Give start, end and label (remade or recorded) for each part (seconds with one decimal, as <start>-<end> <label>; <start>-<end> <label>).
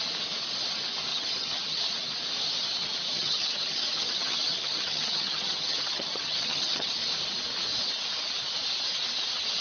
0.0-1.1 recorded; 1.1-1.8 remade; 1.8-3.1 recorded; 3.1-6.9 remade; 6.9-9.6 recorded